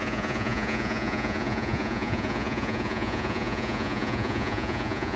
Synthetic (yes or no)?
yes